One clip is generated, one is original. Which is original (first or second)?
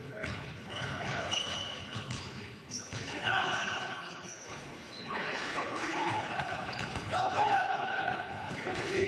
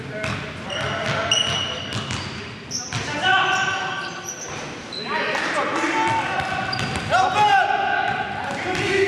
second